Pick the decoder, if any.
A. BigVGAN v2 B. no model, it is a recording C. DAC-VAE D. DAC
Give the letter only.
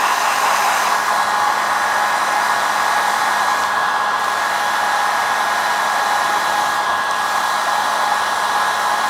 B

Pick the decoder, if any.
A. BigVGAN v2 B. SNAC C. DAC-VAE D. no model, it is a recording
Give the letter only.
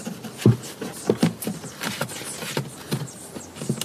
D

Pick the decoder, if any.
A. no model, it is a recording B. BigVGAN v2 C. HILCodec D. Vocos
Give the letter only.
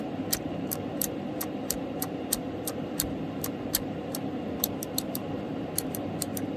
B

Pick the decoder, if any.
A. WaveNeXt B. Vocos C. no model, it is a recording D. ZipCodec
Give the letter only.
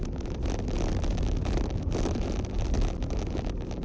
C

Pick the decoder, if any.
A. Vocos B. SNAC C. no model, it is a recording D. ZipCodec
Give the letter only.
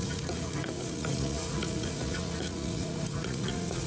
A